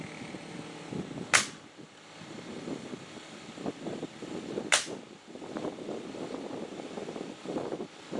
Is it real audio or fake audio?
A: real